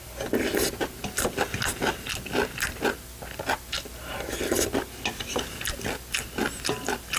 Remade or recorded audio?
recorded